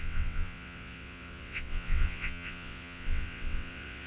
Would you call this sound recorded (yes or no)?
no